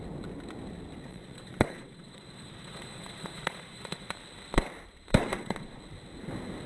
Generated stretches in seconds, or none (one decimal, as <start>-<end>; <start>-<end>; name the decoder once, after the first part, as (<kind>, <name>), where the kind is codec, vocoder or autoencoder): 1.1-4.1 (vocoder, Vocos); 5.2-5.8